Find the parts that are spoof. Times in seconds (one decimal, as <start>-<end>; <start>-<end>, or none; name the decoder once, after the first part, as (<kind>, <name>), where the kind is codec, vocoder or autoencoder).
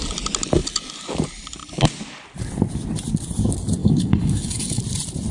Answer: 3.8-4.8 (codec, DAC)